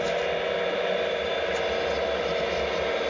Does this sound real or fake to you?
real